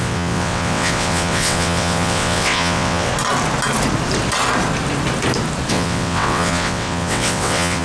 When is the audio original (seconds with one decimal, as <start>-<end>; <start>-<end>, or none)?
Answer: 3.1-5.7